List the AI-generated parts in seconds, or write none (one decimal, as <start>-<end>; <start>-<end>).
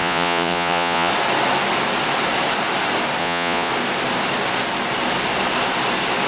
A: 0.0-1.1; 3.2-3.7